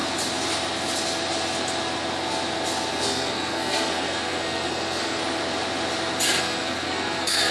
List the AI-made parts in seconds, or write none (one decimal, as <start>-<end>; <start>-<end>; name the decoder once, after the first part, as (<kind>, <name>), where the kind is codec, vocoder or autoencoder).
2.9-5.2 (codec, SNAC); 6.4-7.5